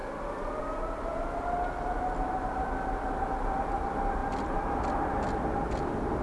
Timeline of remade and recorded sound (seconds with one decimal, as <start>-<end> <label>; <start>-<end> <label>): 0.0-6.2 recorded